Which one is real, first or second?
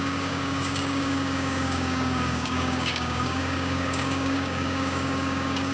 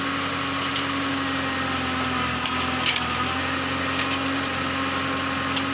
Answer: second